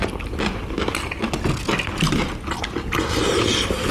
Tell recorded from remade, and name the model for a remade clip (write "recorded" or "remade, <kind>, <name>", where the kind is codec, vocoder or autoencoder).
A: recorded